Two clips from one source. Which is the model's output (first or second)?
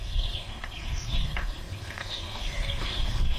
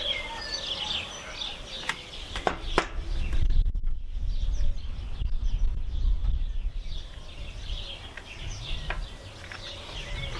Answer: first